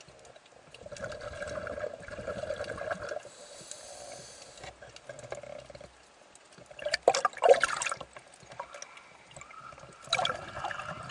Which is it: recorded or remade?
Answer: recorded